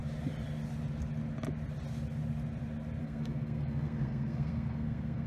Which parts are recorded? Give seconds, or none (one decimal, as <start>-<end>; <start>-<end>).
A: 0.0-3.0